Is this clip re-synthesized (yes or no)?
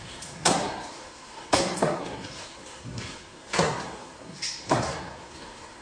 yes